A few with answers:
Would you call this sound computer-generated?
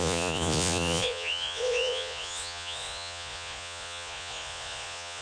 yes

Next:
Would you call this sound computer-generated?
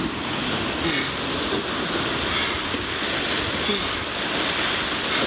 no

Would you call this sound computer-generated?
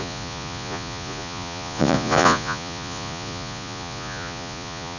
yes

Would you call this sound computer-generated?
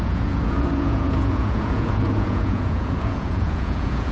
yes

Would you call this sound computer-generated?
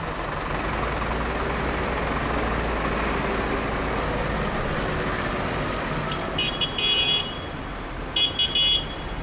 no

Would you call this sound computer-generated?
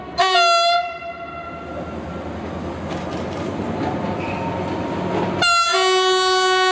no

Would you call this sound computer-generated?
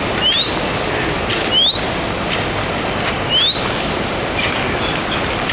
no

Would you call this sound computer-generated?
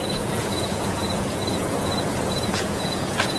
yes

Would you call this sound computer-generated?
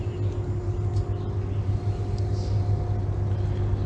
no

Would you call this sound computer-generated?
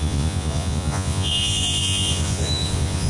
yes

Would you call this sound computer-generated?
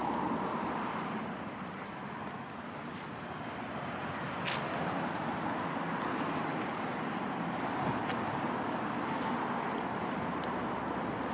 no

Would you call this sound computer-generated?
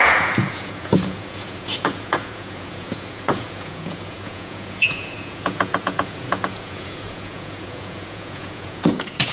yes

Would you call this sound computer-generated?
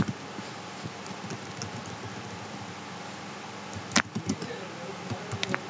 no